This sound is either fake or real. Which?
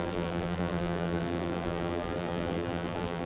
fake